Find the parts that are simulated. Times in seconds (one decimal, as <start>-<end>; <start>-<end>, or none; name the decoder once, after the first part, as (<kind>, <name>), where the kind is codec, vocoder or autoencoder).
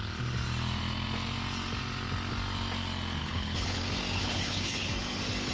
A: 3.2-3.8 (codec, HILCodec); 4.2-4.9